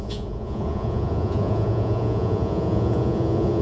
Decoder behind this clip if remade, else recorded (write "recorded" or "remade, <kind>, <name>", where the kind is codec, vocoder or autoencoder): remade, vocoder, Vocos